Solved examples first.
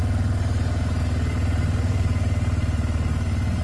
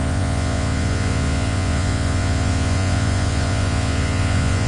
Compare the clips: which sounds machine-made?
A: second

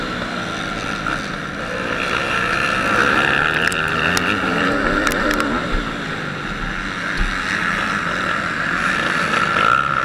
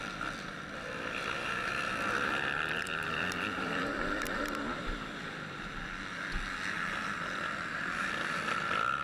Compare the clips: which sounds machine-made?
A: second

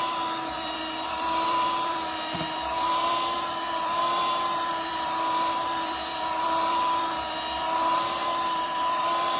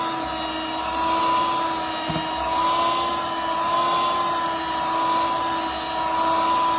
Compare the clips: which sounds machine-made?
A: first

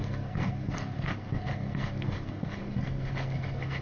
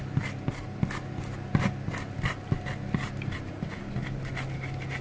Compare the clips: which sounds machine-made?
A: first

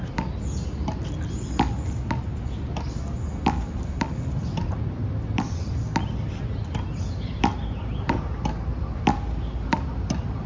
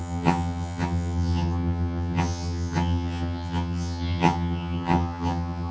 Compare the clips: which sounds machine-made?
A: second